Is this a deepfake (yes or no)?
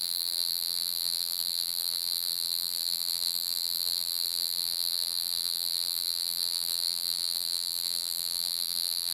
yes